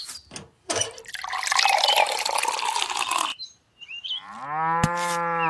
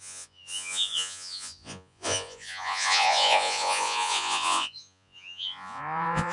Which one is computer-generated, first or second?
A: second